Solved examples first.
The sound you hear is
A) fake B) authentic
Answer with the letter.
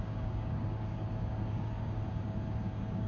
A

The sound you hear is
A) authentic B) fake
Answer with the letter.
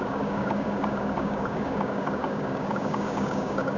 B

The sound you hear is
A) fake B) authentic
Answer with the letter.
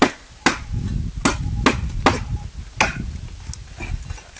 B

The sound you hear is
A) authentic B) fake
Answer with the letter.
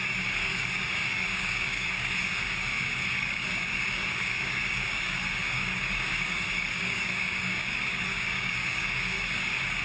B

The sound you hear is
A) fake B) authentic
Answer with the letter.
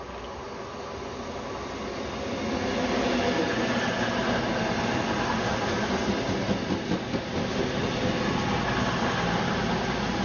B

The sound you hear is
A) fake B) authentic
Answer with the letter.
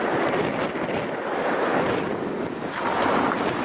B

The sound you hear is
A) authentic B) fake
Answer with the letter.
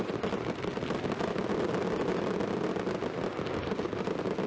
A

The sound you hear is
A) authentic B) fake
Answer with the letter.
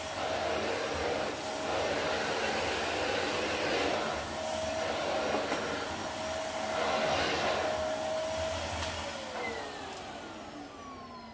A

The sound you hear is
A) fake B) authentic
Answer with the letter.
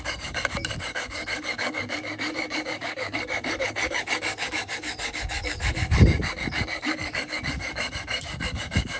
A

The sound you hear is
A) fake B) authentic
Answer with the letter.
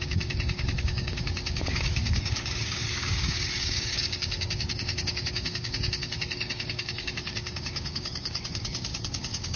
A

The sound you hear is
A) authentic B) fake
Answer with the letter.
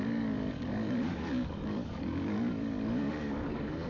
B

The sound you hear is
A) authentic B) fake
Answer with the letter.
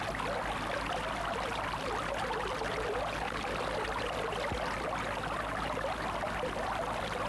A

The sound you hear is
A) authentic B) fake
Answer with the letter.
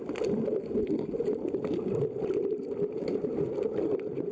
A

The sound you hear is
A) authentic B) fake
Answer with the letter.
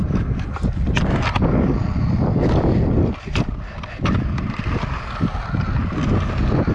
A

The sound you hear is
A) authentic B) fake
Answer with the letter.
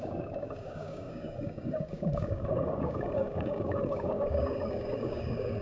B